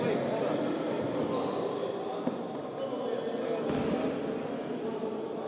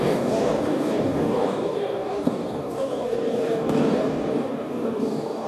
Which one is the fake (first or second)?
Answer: second